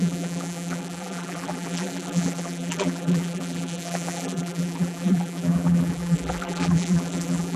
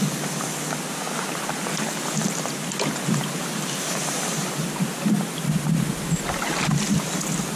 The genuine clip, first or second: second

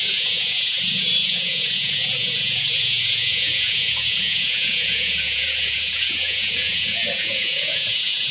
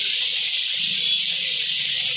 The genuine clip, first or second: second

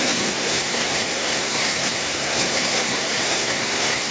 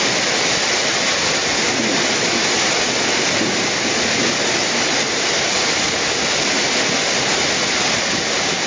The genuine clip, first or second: second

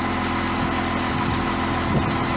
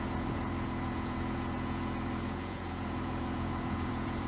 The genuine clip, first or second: first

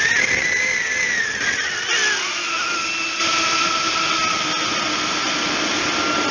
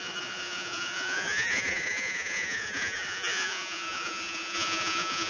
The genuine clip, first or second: first